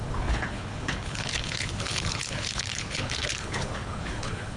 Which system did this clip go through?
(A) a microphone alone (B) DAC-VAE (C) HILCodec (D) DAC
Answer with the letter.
C